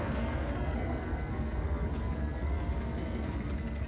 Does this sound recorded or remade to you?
remade